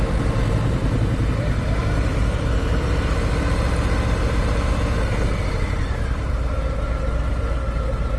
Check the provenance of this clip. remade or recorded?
recorded